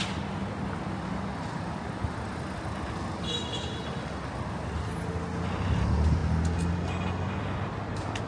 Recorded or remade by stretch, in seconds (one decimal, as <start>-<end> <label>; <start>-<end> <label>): 0.0-8.3 recorded